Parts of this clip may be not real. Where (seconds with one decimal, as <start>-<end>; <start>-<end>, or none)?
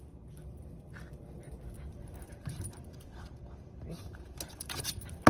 1.9-5.3